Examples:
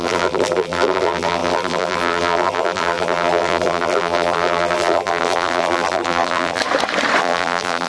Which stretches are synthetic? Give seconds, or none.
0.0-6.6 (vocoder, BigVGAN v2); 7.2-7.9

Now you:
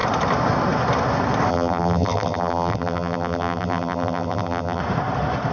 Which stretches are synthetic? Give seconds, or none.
1.5-4.8 (vocoder, BigVGAN v2)

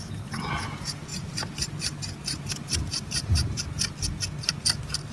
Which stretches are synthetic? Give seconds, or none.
1.1-4.2 (vocoder, BigVGAN v2)